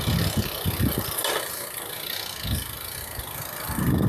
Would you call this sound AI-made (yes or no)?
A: no